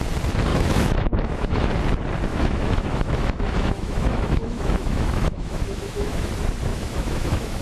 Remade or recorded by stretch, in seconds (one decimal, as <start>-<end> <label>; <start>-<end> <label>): 0.0-0.5 recorded; 0.5-1.7 remade; 1.7-2.3 recorded; 2.3-6.3 remade; 6.3-6.7 recorded; 6.7-7.6 remade